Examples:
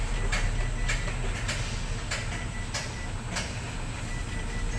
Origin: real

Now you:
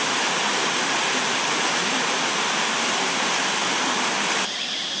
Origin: real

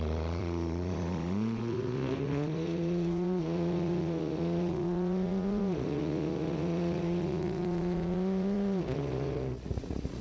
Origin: fake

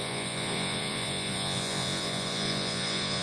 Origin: fake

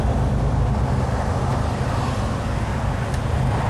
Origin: real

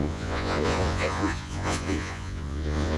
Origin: fake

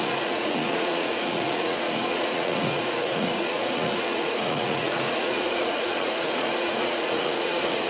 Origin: fake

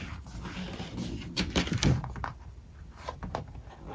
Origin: real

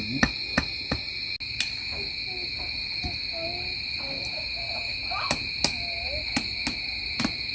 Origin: real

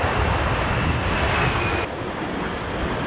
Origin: real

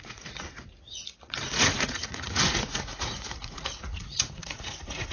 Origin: fake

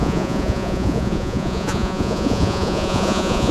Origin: fake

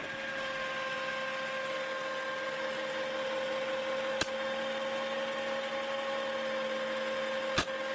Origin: real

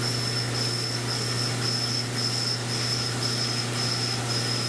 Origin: real